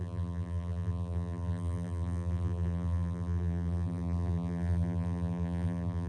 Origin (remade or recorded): remade